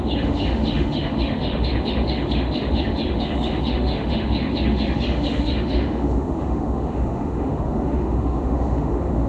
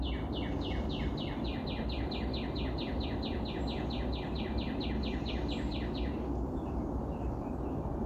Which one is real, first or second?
second